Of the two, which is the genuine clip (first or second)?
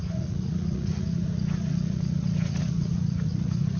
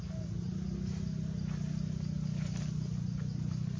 second